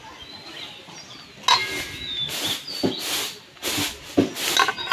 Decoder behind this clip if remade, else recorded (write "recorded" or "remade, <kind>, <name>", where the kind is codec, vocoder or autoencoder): recorded